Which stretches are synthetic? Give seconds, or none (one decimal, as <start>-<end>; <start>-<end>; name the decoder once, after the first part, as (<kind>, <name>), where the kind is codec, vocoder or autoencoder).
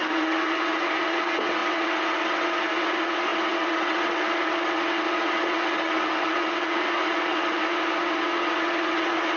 0.0-9.4 (vocoder, WaveNeXt)